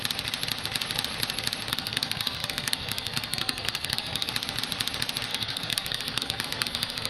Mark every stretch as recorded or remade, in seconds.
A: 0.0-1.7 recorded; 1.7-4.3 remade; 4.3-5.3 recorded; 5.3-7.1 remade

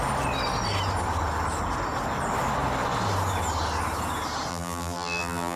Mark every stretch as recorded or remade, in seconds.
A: 0.0-4.5 recorded; 4.5-5.6 remade

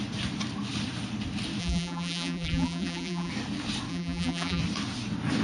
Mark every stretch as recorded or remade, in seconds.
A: 0.0-1.6 recorded; 1.6-3.3 remade; 3.3-3.9 recorded; 3.9-4.6 remade; 4.6-5.4 recorded

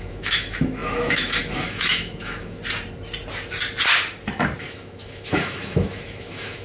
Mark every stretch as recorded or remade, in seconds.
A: 0.0-2.6 remade; 2.6-4.6 recorded; 4.6-6.6 remade

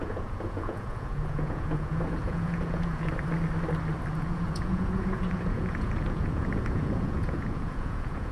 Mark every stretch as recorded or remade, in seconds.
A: 0.0-3.1 remade; 3.1-4.1 recorded; 4.1-8.3 remade

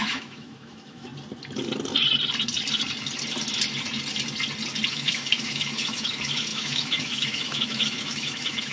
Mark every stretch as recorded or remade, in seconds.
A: 0.0-1.1 remade; 1.1-4.9 recorded; 4.9-8.7 remade